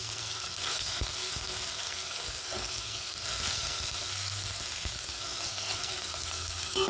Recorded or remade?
remade